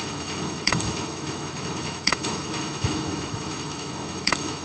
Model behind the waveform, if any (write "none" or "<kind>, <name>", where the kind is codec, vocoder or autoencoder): autoencoder, DAC-VAE